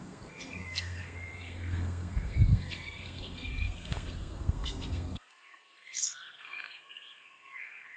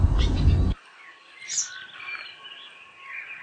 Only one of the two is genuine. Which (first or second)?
second